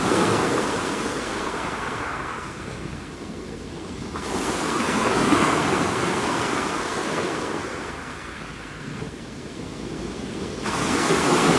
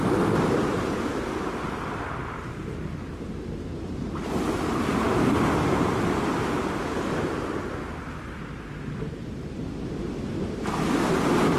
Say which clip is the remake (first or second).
first